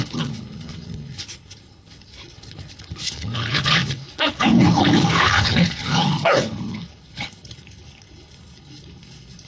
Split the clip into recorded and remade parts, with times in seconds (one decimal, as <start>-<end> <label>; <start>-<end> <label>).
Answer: 0.0-9.5 remade